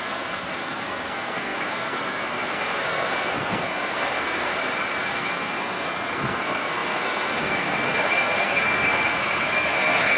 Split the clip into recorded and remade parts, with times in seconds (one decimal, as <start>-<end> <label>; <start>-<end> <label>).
0.0-4.5 remade; 4.5-5.0 recorded; 5.0-10.2 remade